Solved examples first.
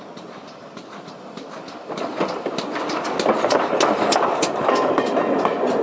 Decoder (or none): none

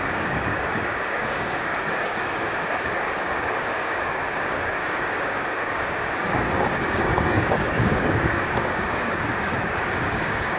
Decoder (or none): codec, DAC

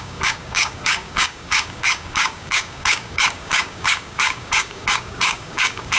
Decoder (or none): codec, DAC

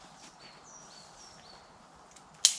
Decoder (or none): none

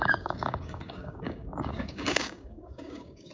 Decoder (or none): codec, DAC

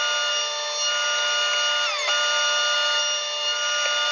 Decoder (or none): none